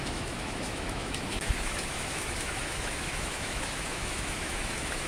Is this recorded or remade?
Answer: remade